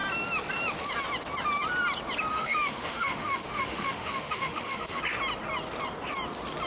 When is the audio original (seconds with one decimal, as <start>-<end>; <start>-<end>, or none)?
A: 0.0-2.3; 5.0-6.7